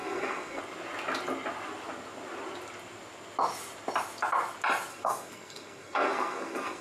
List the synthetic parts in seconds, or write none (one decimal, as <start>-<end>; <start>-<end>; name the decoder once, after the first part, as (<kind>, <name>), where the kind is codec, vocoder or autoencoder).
0.0-0.6 (codec, SNAC); 4.9-6.8